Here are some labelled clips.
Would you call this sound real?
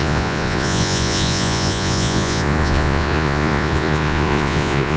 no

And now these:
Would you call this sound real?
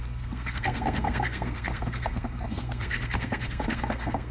no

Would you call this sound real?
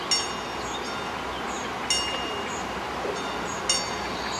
yes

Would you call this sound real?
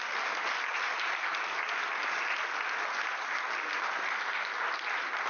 yes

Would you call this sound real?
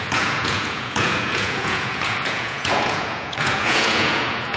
no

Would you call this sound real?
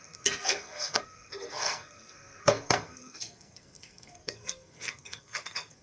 no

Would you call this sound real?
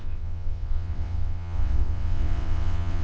no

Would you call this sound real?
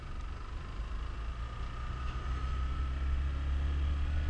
yes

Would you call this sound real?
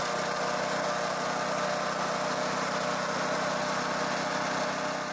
yes